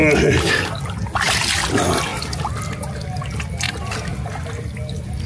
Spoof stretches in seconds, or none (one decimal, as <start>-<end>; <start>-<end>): none